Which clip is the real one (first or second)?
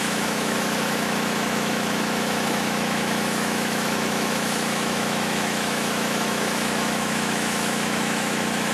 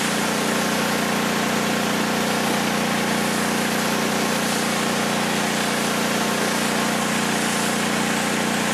second